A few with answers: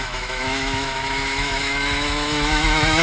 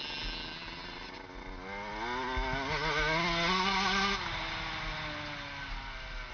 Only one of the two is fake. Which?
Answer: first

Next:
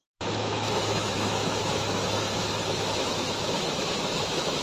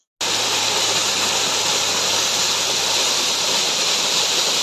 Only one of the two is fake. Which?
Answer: first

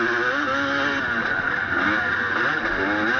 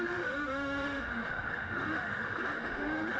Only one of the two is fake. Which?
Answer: second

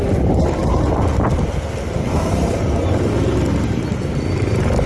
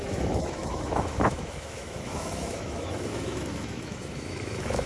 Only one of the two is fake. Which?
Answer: second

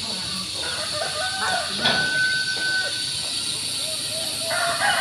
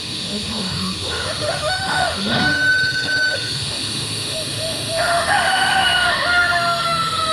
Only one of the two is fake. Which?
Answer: second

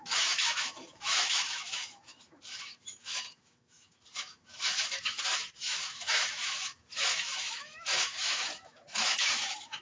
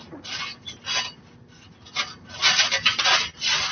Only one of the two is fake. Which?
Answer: first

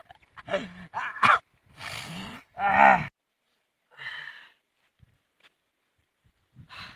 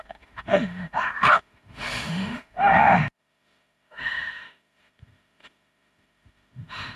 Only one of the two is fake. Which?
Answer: second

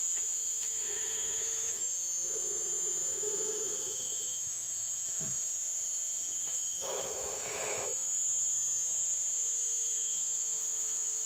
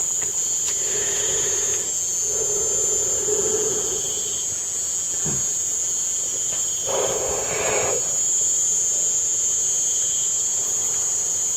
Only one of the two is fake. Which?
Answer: first